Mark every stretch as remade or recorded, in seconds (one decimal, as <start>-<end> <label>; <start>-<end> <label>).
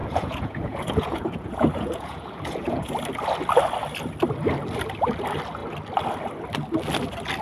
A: 0.0-2.9 remade; 2.9-7.4 recorded